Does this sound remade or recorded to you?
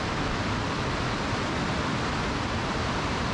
recorded